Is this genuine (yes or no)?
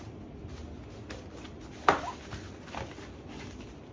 yes